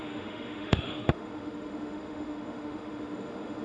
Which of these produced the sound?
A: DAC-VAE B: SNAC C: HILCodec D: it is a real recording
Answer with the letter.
A